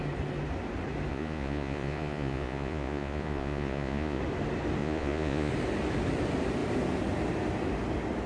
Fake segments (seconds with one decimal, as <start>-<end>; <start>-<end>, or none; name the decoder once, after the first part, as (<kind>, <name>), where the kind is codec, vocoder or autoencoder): 1.1-4.2 (vocoder, Vocos); 4.8-5.5